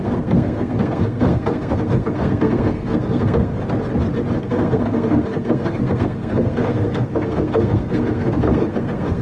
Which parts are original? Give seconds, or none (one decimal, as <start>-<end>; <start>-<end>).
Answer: 3.5-4.4